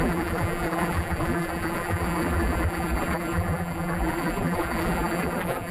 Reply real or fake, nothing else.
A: fake